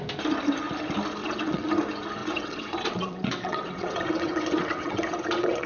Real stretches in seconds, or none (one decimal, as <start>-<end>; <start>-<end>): 0.0-1.2; 1.7-2.2